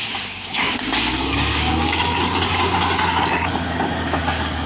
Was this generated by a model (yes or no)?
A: yes